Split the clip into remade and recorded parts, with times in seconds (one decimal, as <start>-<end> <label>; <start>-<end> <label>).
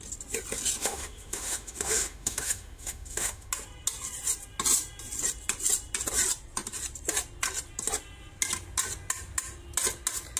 0.0-0.8 recorded; 0.8-3.5 remade; 3.5-10.4 recorded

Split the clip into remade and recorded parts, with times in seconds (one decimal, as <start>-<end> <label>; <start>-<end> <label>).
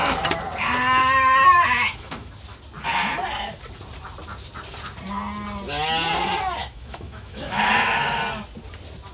0.0-1.0 recorded; 1.0-2.3 remade; 2.3-6.6 recorded; 6.6-7.6 remade; 7.6-9.1 recorded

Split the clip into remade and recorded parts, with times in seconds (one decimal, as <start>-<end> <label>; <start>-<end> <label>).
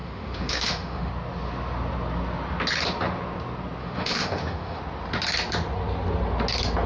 0.0-1.1 remade; 1.1-3.8 recorded; 3.8-4.8 remade; 4.8-6.9 recorded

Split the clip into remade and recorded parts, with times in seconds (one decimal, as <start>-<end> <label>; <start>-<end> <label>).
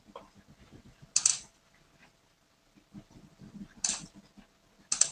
0.0-5.1 recorded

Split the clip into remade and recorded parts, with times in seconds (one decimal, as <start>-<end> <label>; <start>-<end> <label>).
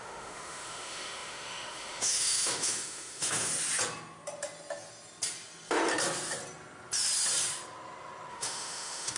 0.0-3.5 remade; 3.5-8.3 recorded; 8.3-9.2 remade